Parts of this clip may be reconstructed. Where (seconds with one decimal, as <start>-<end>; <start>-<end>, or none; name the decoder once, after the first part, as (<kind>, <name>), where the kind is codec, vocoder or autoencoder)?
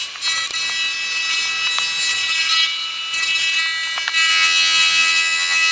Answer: 4.3-5.7 (vocoder, HiFi-GAN)